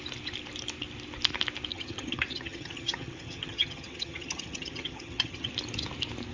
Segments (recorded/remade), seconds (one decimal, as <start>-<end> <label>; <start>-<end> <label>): 0.0-1.7 recorded; 1.7-5.5 remade; 5.5-6.3 recorded